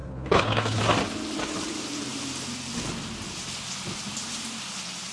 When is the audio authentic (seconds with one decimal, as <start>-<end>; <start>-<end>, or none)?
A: 0.8-5.1

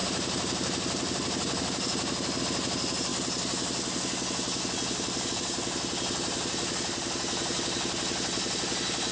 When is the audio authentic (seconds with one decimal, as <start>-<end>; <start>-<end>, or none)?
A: 0.0-9.1

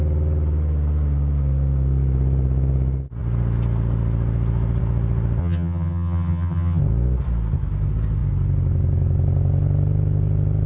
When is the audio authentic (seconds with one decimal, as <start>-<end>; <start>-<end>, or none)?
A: 0.0-5.4; 6.8-10.7

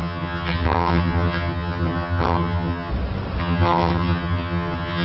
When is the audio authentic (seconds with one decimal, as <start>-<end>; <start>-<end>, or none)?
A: 2.9-3.4

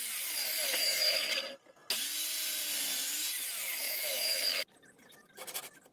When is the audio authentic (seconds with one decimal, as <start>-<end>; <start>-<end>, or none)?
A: 0.0-0.8; 1.3-3.8; 4.4-5.9